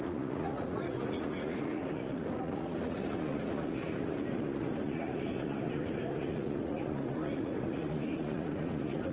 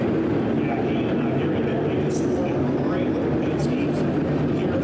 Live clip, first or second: second